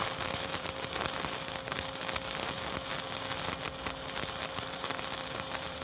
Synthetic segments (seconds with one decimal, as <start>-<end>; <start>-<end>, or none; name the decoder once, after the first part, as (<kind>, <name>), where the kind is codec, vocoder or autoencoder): 0.0-2.9 (vocoder, BigVGAN v2); 4.6-5.8